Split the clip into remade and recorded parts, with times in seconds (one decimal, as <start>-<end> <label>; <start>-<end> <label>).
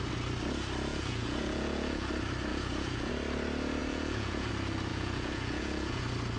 0.0-0.9 recorded; 0.9-2.1 remade; 2.1-2.5 recorded; 2.5-3.1 remade; 3.1-3.8 recorded; 3.8-4.5 remade; 4.5-4.9 recorded; 4.9-6.0 remade; 6.0-6.4 recorded